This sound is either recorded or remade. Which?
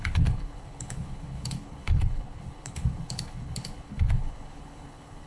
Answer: remade